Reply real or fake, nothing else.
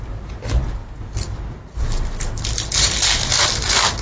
real